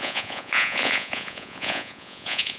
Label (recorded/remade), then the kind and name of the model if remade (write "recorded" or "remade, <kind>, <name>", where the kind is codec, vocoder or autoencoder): remade, vocoder, Vocos